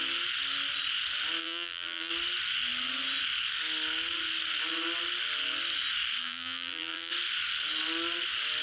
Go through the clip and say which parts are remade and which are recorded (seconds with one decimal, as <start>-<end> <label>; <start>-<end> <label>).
0.0-1.4 recorded; 1.4-2.1 remade; 2.1-6.2 recorded; 6.2-7.1 remade; 7.1-8.6 recorded